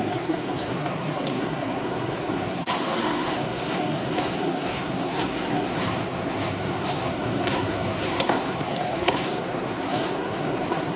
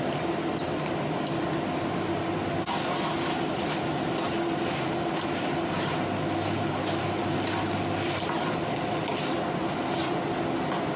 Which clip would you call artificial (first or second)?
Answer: first